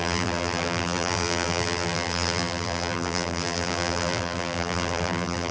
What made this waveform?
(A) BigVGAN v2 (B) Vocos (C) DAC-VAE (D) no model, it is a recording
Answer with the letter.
A